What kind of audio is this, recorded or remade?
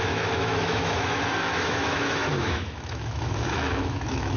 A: remade